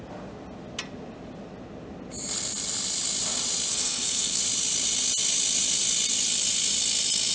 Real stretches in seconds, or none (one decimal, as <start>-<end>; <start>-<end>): 0.0-3.7; 4.4-7.3